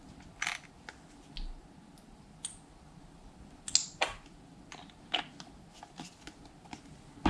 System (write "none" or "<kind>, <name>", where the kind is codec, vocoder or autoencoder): none